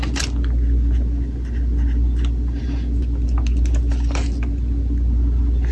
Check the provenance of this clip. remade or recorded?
recorded